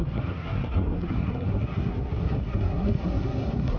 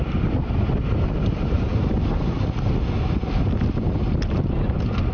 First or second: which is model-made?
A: first